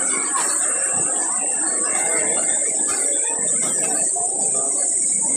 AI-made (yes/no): no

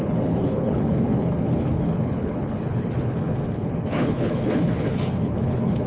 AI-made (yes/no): yes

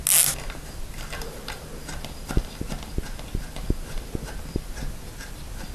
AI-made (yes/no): no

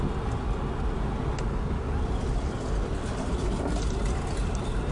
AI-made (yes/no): no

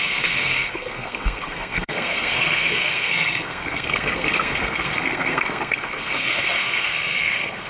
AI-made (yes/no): yes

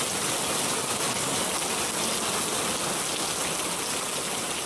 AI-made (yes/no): no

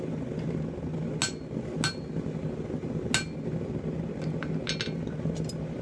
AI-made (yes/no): no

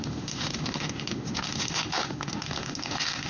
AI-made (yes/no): yes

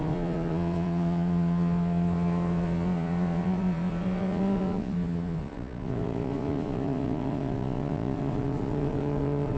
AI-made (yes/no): yes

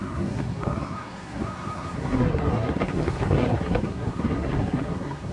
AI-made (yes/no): yes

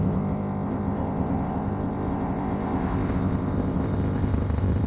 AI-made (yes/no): yes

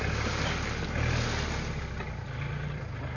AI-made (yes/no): no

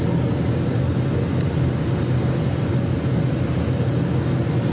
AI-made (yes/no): no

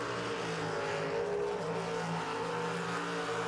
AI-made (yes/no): no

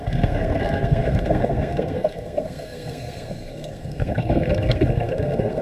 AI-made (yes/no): yes